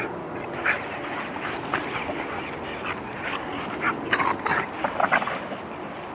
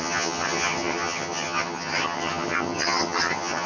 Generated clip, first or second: second